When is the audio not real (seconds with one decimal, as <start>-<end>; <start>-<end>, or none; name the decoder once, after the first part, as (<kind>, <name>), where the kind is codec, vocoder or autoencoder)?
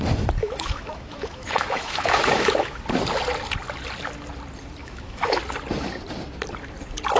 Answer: 0.4-2.8 (autoencoder, DAC-VAE); 4.8-5.4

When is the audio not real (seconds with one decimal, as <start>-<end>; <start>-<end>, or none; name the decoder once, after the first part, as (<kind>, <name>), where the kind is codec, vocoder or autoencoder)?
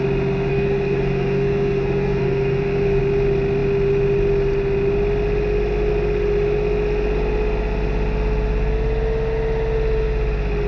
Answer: 0.5-3.0 (codec, SNAC)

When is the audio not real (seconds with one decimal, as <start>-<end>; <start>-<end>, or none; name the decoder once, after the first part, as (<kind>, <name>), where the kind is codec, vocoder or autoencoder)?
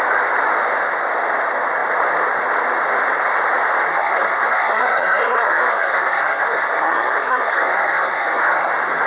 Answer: 3.9-8.7 (codec, SNAC)